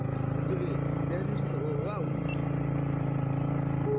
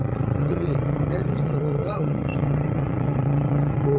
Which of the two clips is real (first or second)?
first